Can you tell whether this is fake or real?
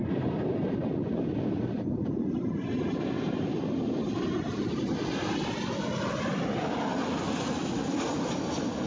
real